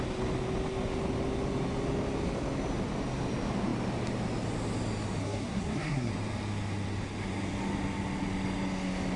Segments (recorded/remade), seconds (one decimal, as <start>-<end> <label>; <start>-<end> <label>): 0.0-5.2 recorded; 5.2-6.1 remade; 6.1-9.2 recorded